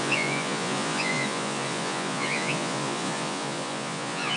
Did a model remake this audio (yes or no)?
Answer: yes